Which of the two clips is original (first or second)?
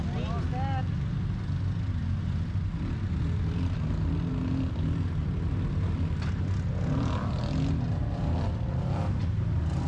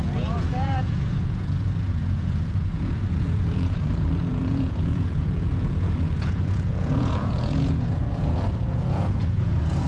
first